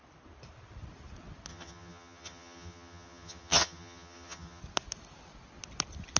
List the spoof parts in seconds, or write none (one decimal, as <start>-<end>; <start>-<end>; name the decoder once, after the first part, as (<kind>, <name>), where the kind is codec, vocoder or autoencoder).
1.5-4.6 (vocoder, HiFi-GAN)